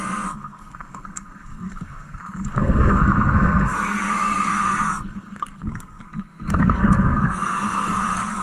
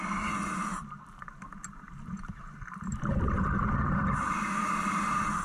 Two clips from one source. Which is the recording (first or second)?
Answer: second